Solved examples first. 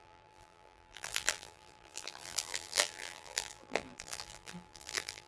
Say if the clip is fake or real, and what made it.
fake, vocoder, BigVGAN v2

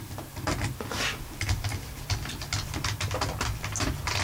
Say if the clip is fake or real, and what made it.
real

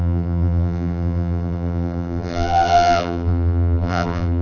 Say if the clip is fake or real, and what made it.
fake, vocoder, BigVGAN v2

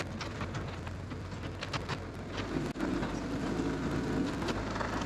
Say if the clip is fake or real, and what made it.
real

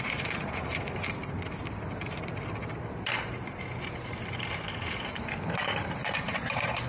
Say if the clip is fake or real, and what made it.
fake, vocoder, BigVGAN v2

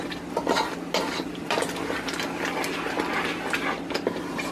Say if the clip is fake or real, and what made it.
real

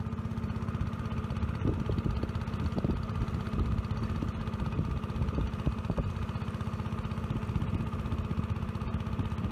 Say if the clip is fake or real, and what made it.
real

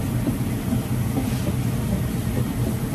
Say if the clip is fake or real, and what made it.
real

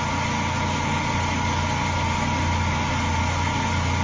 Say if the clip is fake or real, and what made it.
real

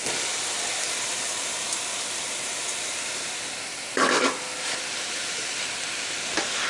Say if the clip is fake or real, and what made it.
fake, vocoder, BigVGAN v2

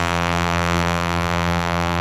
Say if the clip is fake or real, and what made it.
fake, vocoder, BigVGAN v2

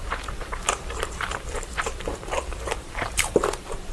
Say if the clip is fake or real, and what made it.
fake, vocoder, BigVGAN v2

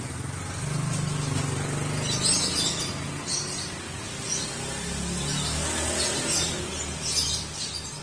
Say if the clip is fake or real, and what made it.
real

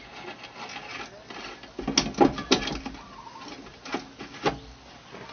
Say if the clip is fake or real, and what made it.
real